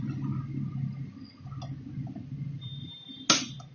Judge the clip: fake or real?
real